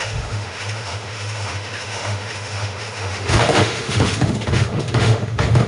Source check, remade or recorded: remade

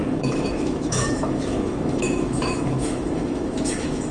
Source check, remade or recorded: remade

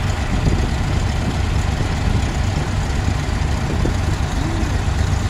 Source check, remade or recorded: recorded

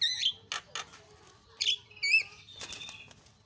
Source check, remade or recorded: recorded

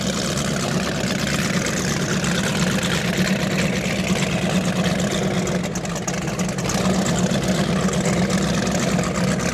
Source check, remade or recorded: recorded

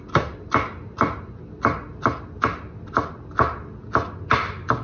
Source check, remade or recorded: recorded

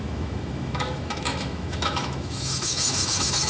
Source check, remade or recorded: remade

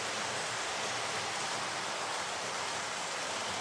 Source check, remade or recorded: recorded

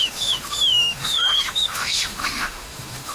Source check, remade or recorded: remade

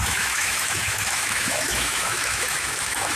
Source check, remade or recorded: remade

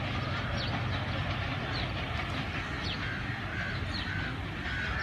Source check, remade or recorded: recorded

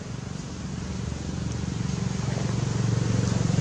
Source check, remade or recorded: recorded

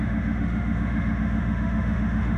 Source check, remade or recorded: remade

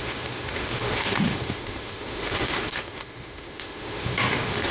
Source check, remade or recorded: remade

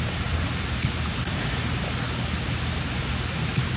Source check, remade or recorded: recorded